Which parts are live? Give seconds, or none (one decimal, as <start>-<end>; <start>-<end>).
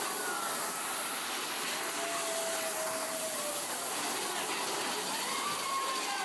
0.0-6.2